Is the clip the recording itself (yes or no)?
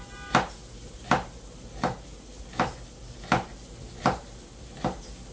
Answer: yes